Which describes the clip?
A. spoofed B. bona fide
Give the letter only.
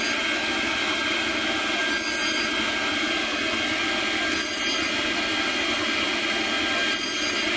B